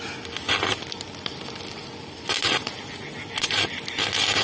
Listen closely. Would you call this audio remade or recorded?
recorded